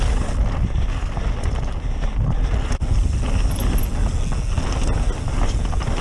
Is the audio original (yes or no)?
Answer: yes